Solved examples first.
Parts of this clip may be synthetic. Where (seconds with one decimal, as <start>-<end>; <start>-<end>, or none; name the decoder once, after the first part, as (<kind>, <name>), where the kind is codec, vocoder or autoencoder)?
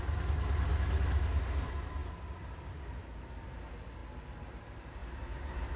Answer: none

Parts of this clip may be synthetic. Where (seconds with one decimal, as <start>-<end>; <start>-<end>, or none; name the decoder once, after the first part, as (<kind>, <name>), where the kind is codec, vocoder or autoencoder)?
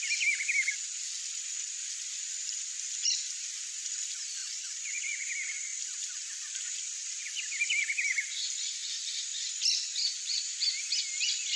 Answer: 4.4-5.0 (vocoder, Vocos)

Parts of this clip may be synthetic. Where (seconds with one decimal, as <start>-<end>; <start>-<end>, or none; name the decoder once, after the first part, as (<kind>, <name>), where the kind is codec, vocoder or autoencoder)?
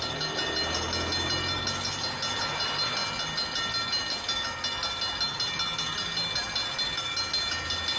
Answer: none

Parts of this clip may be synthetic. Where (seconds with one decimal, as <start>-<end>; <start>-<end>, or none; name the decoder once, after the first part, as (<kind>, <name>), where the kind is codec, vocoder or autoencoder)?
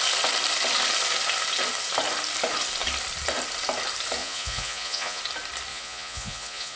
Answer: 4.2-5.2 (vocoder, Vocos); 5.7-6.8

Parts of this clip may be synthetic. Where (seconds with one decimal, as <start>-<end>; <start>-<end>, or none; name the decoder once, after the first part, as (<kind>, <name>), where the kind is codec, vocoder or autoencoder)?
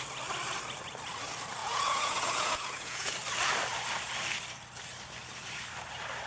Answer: 1.6-3.1 (vocoder, Vocos)